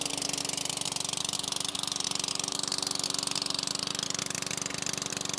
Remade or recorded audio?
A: recorded